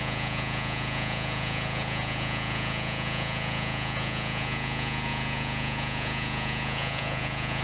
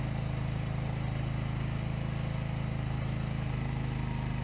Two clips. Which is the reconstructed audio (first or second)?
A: first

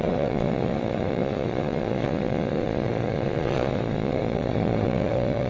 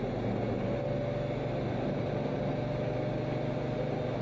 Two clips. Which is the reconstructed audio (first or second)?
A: first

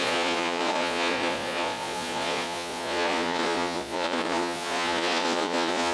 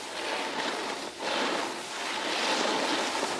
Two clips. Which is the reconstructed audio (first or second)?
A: first